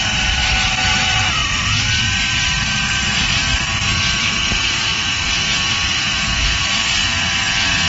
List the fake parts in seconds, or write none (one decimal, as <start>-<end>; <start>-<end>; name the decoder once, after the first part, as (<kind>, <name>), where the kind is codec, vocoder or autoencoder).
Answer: 4.9-6.6 (vocoder, BigVGAN v2)